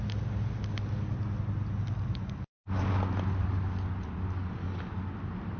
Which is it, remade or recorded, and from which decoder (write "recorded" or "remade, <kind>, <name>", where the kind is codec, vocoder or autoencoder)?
recorded